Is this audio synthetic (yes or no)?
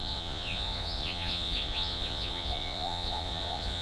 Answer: yes